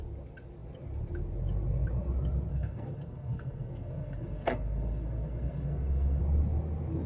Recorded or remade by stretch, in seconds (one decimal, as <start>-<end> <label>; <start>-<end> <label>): 0.0-2.5 recorded; 2.5-6.2 remade; 6.2-7.1 recorded